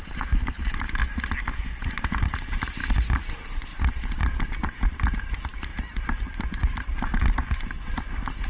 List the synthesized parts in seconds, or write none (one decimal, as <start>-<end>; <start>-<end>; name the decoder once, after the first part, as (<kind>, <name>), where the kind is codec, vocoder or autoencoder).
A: 0.0-1.0 (vocoder, BigVGAN v2); 1.8-2.8; 3.3-3.7; 4.9-8.5